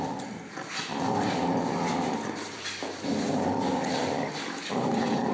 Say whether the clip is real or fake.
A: fake